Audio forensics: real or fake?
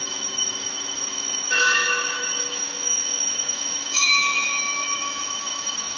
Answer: fake